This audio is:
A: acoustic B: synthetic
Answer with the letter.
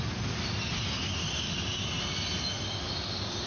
A